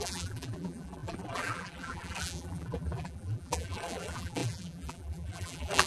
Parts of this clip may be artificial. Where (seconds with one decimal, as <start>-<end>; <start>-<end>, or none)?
0.0-5.9